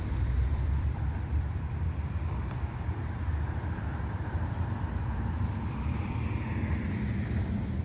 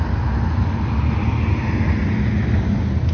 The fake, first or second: first